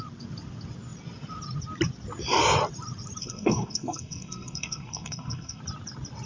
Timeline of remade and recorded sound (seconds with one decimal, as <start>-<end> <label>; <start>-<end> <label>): 0.0-3.2 recorded; 3.2-5.6 remade; 5.6-6.3 recorded